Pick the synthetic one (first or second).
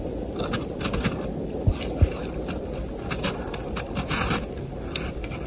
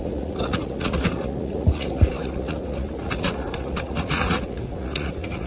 second